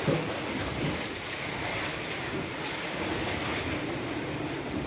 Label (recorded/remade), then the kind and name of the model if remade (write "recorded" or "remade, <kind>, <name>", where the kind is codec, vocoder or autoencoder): recorded